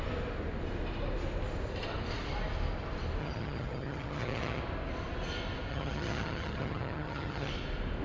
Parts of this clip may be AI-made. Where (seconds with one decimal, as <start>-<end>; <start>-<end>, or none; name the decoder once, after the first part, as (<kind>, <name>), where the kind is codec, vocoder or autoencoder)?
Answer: 3.2-4.6 (vocoder, HiFi-GAN); 5.7-7.5